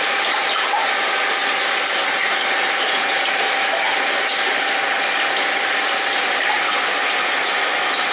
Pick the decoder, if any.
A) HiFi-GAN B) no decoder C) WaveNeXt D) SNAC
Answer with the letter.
B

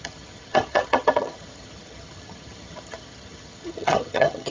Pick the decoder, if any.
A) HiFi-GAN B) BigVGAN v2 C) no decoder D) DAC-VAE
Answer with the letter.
A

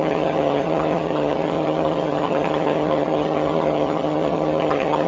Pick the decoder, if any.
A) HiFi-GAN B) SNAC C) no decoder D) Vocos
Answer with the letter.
A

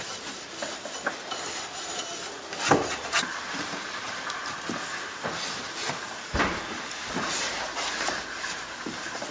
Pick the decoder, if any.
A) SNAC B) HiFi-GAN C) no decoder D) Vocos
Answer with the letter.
C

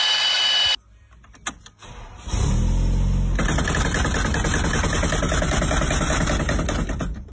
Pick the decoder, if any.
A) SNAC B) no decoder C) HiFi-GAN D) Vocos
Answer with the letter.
B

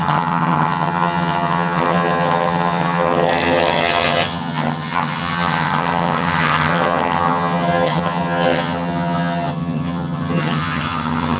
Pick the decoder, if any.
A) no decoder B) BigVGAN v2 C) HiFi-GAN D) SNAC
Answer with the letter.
C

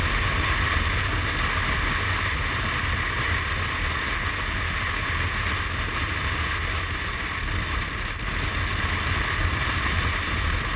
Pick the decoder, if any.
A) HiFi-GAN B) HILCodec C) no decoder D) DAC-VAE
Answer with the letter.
C